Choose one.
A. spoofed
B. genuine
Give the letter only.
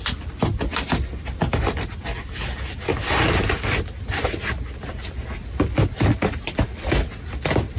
B